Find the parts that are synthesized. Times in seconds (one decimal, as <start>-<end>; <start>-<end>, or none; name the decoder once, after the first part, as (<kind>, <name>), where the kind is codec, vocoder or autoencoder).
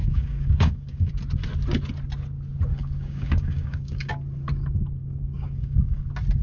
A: 0.0-1.1 (codec, DAC); 2.7-4.1; 5.0-6.0